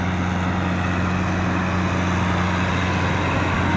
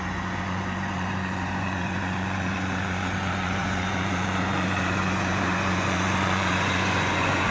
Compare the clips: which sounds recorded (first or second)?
first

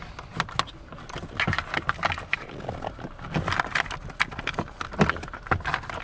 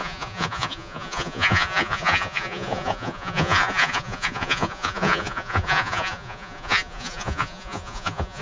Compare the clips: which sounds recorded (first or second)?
first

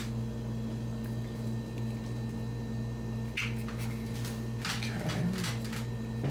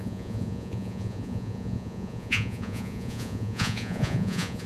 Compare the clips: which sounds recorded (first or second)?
first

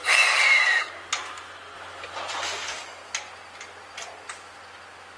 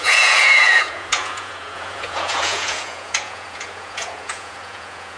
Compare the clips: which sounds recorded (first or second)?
first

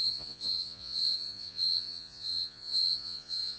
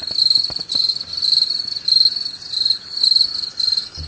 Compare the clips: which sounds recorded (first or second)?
second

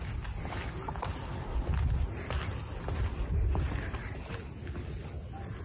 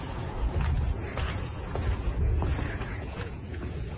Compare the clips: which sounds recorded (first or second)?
first